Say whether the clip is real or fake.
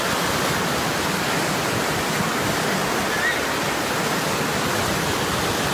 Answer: real